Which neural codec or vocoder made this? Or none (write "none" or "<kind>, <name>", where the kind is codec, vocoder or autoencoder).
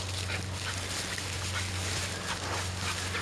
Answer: none